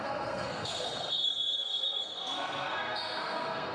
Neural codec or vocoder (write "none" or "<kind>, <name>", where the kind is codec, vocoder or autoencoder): codec, SNAC